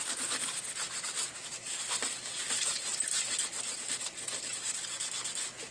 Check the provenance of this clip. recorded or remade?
recorded